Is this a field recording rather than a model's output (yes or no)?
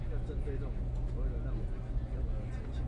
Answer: yes